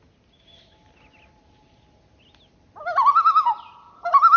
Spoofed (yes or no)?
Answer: no